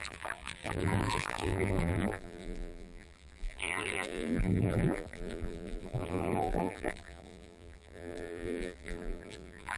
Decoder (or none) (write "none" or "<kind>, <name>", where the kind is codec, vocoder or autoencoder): vocoder, BigVGAN v2